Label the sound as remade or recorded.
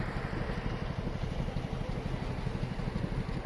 recorded